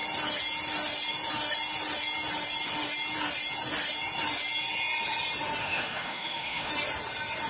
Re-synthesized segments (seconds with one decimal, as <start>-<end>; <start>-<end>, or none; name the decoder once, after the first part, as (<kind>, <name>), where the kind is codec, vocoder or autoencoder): 5.6-6.7 (autoencoder, DAC-VAE)

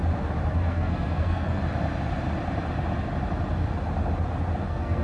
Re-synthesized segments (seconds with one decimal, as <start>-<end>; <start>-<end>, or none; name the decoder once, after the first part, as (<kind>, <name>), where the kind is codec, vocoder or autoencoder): 0.5-1.6 (codec, SNAC); 4.6-5.0

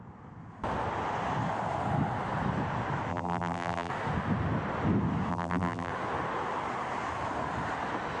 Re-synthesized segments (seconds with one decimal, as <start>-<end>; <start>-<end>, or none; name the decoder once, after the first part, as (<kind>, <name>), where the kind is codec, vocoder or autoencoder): 3.1-3.9 (vocoder, BigVGAN v2); 5.3-5.9

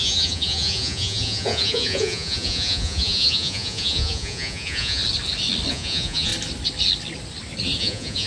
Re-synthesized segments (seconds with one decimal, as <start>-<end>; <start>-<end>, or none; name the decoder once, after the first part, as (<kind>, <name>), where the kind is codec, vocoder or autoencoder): 0.0-5.0 (vocoder, Vocos); 5.7-6.3; 7.8-8.3